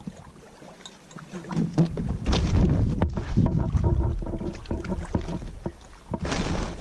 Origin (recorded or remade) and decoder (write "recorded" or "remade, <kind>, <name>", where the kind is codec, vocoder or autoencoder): recorded